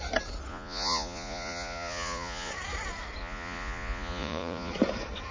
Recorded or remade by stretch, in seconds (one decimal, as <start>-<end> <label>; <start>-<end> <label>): 0.0-0.5 recorded; 0.5-2.5 remade; 2.5-3.2 recorded; 3.2-4.7 remade; 4.7-5.3 recorded